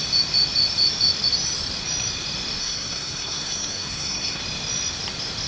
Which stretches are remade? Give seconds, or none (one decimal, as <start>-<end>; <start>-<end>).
2.6-4.4